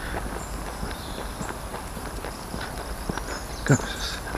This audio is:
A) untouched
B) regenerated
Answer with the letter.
A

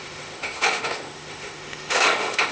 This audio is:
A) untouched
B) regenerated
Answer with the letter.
B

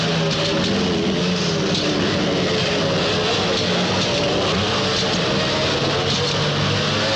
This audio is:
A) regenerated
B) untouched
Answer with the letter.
B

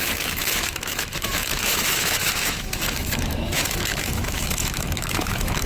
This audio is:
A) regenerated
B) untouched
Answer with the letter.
A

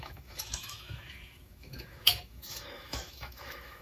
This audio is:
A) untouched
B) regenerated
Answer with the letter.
B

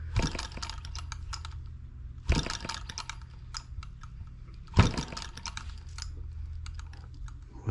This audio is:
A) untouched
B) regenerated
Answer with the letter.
A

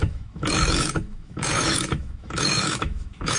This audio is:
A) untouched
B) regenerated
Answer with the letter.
B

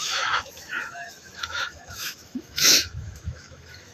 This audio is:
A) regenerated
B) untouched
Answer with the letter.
A